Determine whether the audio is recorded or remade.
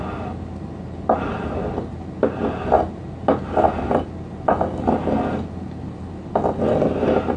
recorded